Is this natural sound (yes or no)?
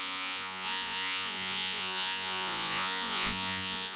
no